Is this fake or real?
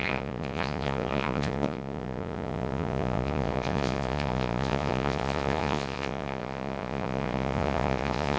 fake